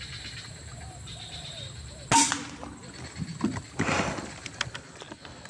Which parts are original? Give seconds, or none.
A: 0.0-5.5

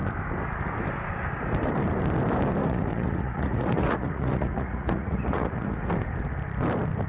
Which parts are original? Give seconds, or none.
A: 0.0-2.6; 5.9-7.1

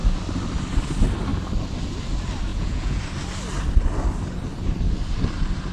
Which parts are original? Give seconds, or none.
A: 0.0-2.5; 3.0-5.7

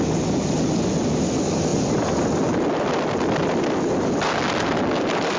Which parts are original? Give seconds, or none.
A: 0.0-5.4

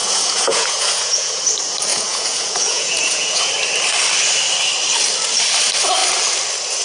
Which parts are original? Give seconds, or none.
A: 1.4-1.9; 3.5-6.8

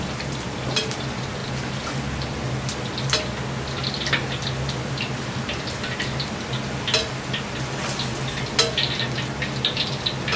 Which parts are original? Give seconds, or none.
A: 0.0-10.4

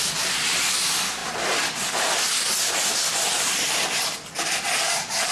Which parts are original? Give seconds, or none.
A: 0.0-5.3

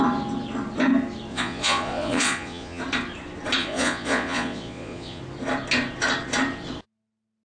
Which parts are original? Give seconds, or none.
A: 0.0-1.3; 2.8-3.6; 5.2-7.5